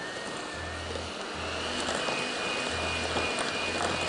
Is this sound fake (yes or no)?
no